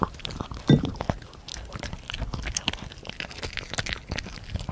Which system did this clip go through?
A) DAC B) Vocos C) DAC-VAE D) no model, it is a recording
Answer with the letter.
D